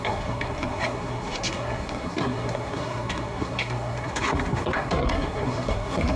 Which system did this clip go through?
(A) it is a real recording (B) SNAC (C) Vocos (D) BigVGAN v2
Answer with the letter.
B